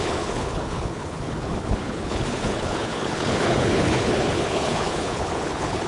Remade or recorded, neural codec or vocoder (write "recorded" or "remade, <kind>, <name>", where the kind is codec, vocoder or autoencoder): remade, codec, HILCodec